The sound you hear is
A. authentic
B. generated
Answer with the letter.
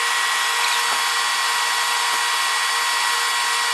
A